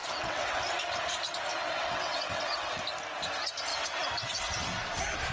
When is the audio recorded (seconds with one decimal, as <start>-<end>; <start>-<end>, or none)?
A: 0.6-1.6; 2.7-3.7; 4.4-5.3